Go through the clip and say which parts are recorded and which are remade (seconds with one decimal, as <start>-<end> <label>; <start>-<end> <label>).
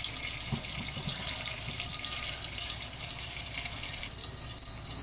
0.0-1.1 recorded; 1.1-4.1 remade; 4.1-5.0 recorded